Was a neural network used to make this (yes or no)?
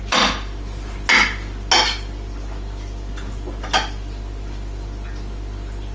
no